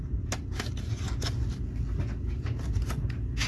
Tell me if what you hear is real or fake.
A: real